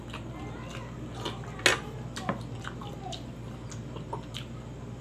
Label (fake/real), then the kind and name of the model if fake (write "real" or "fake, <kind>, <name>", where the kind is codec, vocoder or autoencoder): real